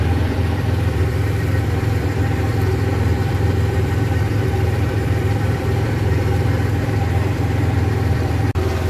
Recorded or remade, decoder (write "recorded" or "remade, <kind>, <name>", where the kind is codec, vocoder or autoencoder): remade, vocoder, BigVGAN v2